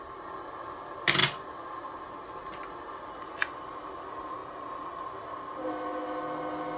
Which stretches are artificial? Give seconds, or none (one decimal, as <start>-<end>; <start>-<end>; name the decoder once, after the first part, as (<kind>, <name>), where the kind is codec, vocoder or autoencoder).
none